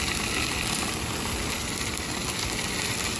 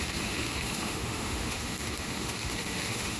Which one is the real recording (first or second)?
first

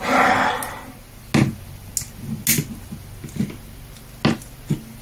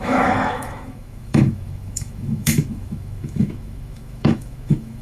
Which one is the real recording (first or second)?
first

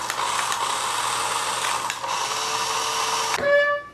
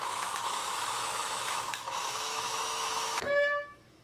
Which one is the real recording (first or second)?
first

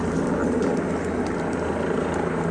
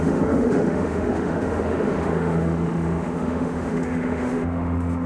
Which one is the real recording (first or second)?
first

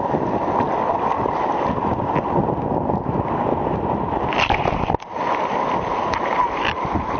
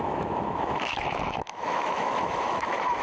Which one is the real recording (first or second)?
first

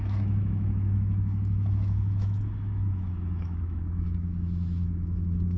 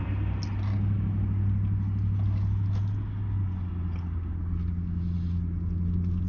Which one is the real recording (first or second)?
second